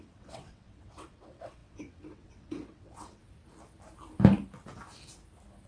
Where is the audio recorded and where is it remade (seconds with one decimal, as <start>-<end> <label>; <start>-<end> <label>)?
0.0-3.2 remade; 3.2-5.7 recorded